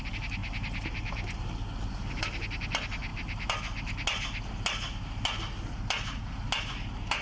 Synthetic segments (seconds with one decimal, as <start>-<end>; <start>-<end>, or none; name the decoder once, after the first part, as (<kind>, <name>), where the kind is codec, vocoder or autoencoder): none